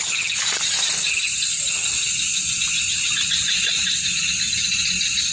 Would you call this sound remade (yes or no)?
no